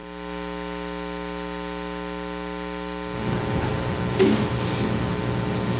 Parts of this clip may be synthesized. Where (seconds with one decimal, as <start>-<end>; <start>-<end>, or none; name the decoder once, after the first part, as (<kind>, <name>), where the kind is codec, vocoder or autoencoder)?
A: none